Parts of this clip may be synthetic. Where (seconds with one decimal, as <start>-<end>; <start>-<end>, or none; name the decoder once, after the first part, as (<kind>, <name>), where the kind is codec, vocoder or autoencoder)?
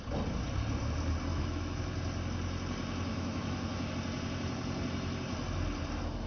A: 1.3-1.8 (autoencoder, DAC-VAE); 3.1-3.9